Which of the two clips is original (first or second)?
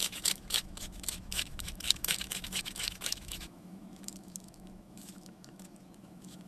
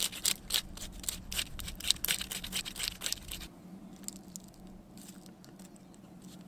second